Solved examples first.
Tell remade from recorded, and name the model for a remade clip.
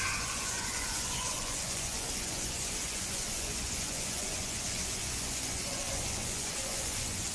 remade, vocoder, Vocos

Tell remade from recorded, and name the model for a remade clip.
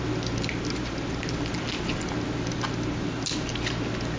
recorded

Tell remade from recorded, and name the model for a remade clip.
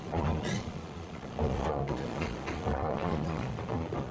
remade, vocoder, Vocos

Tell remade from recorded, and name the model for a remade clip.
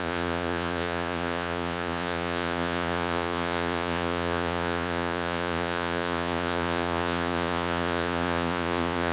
remade, vocoder, Vocos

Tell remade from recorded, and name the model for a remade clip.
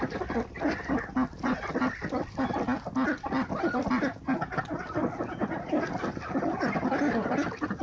recorded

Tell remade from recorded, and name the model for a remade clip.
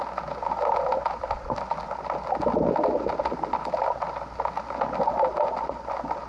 recorded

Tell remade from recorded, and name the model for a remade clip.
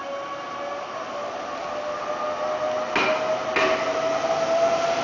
recorded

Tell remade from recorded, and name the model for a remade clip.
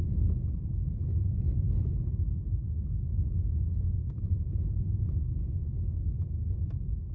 recorded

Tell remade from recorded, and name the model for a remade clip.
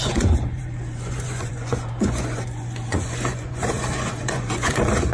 remade, vocoder, Vocos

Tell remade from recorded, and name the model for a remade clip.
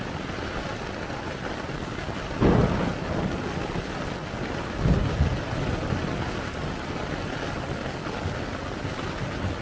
recorded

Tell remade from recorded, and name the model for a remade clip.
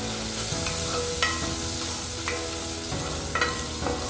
recorded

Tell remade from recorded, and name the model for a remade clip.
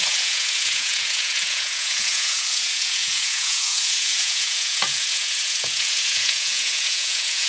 remade, vocoder, Vocos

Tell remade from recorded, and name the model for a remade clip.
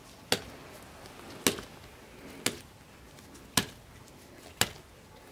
recorded